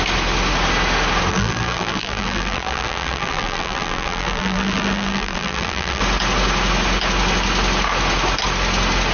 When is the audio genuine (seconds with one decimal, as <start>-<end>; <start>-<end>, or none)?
0.0-1.3; 6.0-9.1